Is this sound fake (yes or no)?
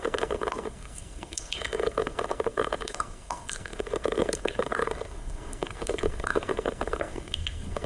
yes